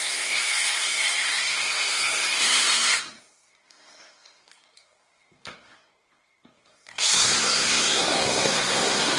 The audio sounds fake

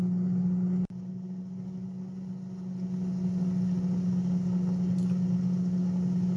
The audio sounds real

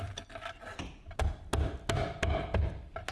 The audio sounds real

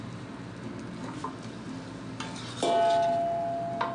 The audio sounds real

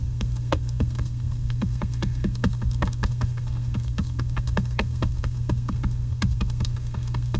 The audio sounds fake